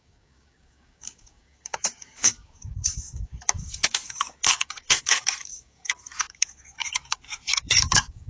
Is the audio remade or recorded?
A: remade